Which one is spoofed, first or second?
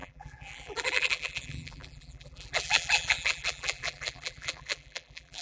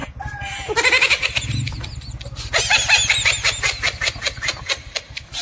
first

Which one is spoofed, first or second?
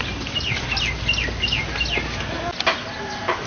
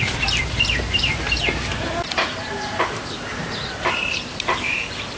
second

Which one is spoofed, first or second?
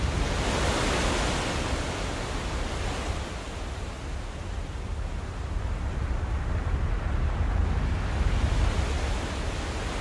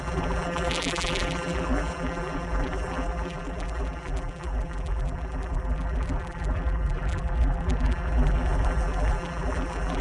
second